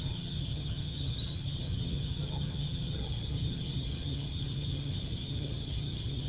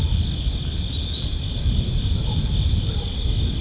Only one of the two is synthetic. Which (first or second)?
first